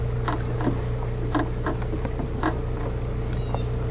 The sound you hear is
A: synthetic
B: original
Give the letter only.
B